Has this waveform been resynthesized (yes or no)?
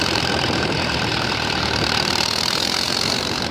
yes